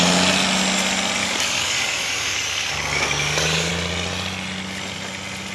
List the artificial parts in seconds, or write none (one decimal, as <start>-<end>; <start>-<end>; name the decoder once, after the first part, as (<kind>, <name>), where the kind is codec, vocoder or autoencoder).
1.2-3.7 (codec, DAC)